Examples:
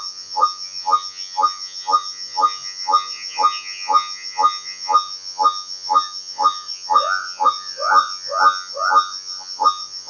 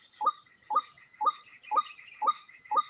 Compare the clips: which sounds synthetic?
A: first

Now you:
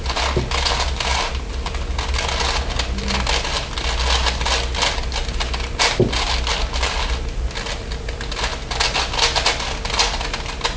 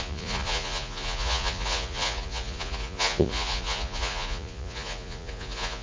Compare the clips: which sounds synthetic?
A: second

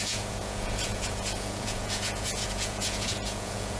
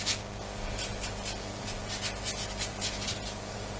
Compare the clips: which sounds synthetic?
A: first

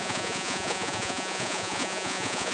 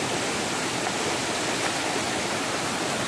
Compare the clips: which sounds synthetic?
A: first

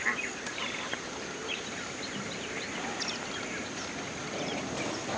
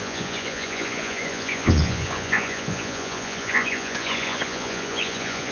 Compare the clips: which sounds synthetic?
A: second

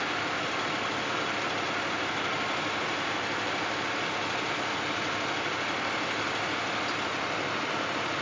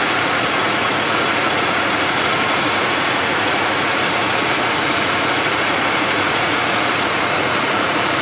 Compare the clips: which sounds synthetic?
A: second